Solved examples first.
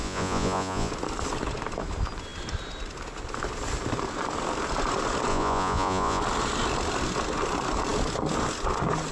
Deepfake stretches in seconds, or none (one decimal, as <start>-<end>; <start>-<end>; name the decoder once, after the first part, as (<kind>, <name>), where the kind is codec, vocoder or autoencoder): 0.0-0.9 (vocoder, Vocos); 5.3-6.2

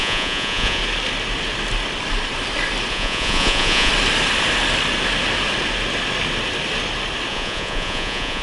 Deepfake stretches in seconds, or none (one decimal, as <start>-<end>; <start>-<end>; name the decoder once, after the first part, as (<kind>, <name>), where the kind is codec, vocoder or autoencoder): 0.0-0.8 (vocoder, Vocos); 2.9-3.9; 7.3-8.4

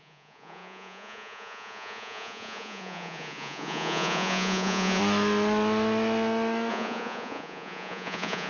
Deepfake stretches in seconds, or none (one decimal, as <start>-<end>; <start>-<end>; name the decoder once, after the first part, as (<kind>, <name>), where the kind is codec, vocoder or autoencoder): 0.0-5.0 (vocoder, Vocos); 6.7-8.5

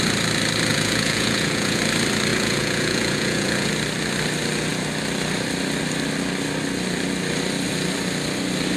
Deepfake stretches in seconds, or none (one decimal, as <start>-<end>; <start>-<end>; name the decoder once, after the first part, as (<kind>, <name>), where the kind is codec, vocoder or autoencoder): 0.7-1.8 (vocoder, Vocos); 2.3-3.7

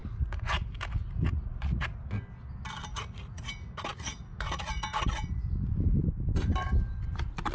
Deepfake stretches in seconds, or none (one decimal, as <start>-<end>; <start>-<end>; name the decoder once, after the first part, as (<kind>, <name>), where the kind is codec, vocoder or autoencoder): 0.0-0.6 (vocoder, Vocos); 1.0-2.0; 2.9-5.7

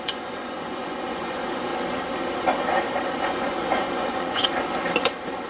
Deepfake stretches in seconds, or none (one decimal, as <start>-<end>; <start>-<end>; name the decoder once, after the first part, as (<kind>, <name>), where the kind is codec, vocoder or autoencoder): 0.0-1.7 (vocoder, Vocos); 3.2-4.4